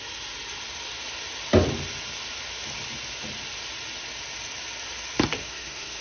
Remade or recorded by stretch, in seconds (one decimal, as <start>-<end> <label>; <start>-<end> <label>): 0.0-5.4 recorded; 5.4-6.0 remade